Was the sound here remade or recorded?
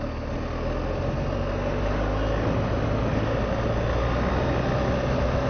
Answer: recorded